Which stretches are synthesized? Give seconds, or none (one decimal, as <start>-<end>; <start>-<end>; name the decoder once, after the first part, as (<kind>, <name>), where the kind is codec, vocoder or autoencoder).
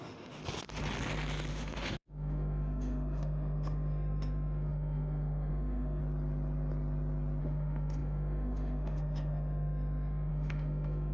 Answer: 0.0-0.4 (autoencoder, DAC-VAE); 1.5-6.0; 7.4-11.1